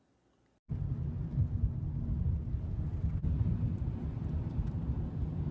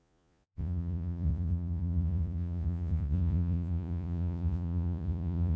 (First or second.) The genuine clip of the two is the first